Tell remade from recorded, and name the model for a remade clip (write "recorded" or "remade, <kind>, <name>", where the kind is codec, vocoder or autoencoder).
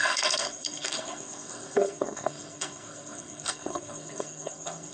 remade, codec, SNAC